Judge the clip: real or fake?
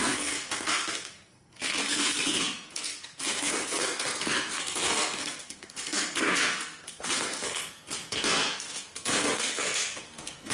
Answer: fake